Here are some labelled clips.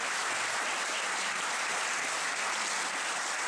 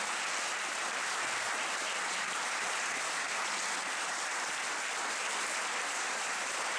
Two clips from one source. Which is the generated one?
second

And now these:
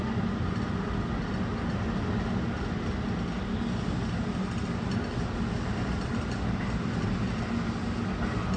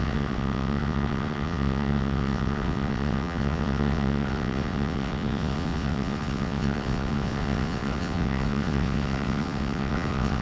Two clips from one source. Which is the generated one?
second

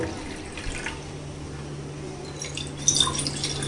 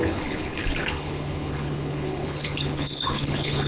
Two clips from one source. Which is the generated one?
second